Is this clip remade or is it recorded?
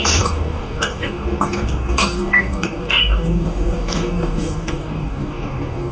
remade